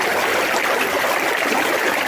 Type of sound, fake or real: real